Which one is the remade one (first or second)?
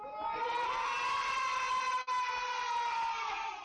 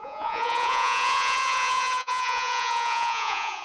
second